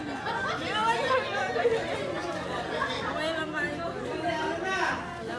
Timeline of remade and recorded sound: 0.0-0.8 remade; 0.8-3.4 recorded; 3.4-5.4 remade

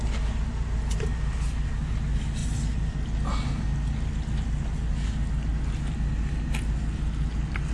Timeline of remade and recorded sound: 0.0-7.7 recorded